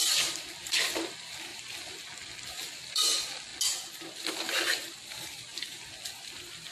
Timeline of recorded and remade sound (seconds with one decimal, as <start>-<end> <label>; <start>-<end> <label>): 0.0-3.5 remade; 3.5-4.3 recorded; 4.3-6.7 remade